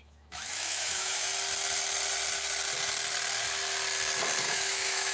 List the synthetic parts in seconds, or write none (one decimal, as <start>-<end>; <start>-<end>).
0.0-1.3; 4.4-5.1